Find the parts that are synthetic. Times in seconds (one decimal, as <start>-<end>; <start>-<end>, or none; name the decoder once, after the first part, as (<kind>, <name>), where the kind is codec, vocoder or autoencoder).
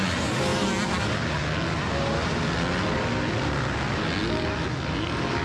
none